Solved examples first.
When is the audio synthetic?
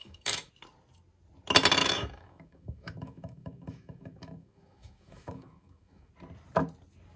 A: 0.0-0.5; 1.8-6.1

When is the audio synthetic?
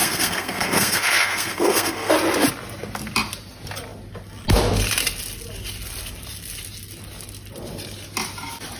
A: 0.0-2.1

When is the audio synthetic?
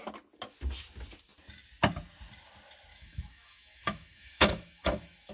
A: 2.9-5.3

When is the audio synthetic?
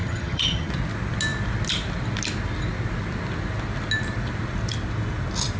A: 0.0-0.7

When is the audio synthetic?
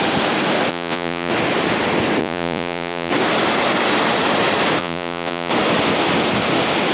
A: 0.7-1.3; 2.2-3.1; 4.8-5.5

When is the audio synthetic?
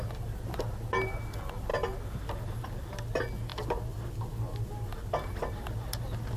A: none